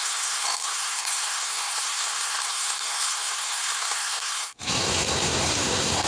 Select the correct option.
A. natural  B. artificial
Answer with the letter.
B